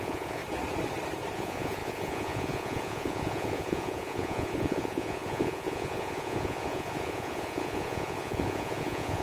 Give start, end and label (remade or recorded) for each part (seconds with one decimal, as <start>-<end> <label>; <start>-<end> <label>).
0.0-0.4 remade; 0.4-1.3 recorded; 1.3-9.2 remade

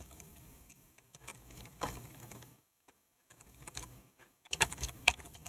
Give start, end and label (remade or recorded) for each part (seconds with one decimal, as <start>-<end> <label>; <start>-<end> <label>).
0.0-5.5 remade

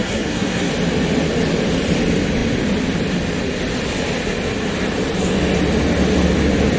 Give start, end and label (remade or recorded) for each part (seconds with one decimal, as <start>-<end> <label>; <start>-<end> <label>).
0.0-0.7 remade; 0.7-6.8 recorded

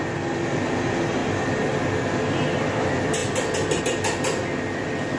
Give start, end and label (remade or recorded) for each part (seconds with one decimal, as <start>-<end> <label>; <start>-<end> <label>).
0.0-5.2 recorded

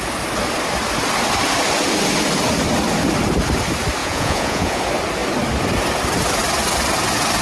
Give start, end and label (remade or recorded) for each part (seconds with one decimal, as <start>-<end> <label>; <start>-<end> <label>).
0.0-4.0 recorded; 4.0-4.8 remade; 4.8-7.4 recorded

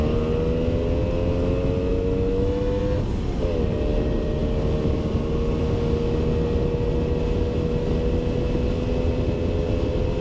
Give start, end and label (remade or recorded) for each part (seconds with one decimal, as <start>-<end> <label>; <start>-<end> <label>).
0.0-1.9 recorded; 1.9-2.8 remade; 2.8-10.2 recorded

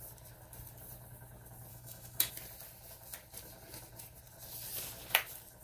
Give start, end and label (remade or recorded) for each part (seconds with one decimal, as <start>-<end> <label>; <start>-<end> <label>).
0.0-1.7 recorded; 1.7-2.3 remade; 2.3-5.6 recorded

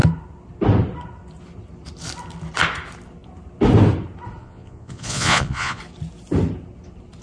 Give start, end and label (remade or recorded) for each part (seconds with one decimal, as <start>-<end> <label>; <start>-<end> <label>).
0.0-4.4 recorded; 4.4-5.8 remade; 5.8-7.2 recorded